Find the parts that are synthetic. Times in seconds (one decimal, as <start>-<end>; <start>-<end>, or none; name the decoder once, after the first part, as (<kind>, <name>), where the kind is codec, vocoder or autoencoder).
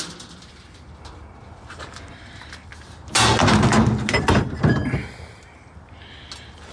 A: 0.0-2.7 (vocoder, BigVGAN v2)